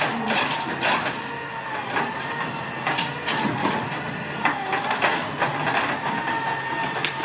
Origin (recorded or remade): recorded